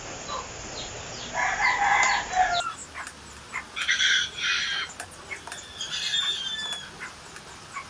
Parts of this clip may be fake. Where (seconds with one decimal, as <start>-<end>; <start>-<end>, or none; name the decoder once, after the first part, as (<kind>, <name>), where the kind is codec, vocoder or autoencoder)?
none